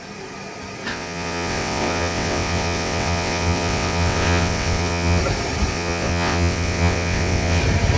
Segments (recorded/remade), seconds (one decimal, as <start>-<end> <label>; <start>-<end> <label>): 0.0-0.9 recorded; 0.9-5.2 remade; 5.2-5.7 recorded; 5.7-7.6 remade; 7.6-8.0 recorded